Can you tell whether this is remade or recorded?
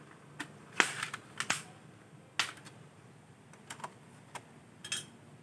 recorded